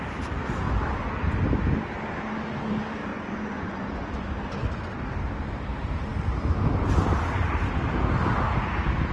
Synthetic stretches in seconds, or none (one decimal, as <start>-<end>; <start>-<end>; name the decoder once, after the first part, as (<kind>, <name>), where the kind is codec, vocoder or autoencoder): 3.1-4.2 (vocoder, Vocos)